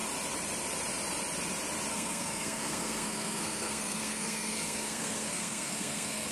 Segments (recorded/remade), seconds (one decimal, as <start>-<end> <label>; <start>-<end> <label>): 0.0-1.9 recorded; 1.9-6.3 remade